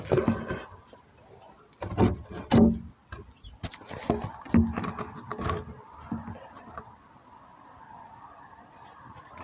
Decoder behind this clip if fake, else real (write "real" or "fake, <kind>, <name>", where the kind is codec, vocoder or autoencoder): real